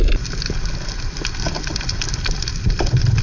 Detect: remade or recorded recorded